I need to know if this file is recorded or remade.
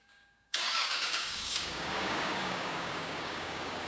remade